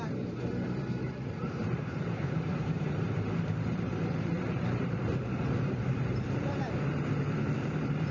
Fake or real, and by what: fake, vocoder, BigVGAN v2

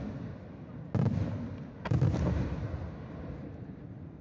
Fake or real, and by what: real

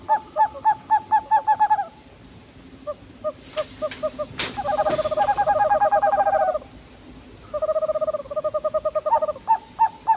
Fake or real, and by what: real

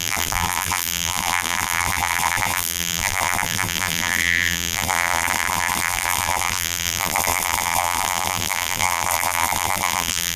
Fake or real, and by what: fake, vocoder, BigVGAN v2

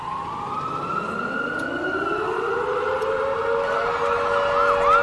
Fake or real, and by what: real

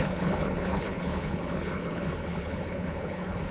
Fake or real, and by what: fake, codec, HILCodec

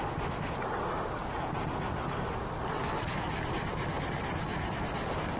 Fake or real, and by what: real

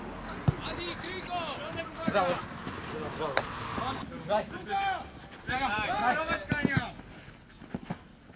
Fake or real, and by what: real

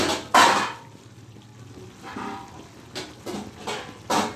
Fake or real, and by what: real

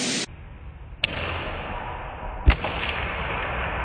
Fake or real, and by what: real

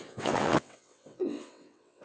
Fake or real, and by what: fake, vocoder, WaveNeXt